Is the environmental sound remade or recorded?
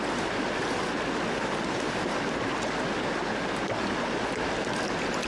recorded